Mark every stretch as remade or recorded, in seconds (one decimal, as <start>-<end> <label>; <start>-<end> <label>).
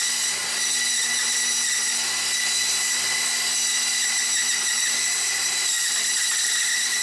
0.0-4.4 recorded; 4.4-7.0 remade